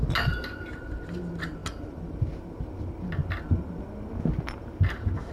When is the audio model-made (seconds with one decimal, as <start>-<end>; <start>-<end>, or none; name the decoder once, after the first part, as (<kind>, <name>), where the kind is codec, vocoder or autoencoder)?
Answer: none